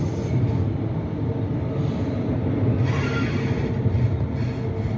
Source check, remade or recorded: recorded